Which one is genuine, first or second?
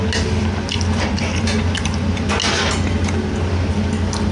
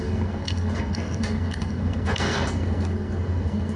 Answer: first